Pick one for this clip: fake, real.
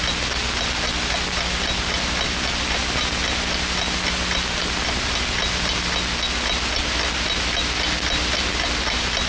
real